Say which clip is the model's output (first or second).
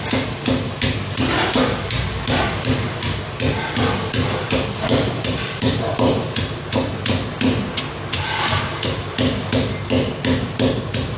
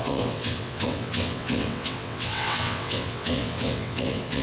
second